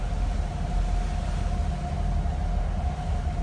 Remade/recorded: recorded